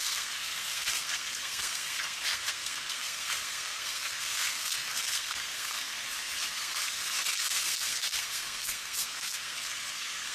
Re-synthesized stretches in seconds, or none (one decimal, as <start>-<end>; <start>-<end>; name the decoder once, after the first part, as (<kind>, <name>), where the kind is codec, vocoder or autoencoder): 0.0-10.3 (codec, SNAC)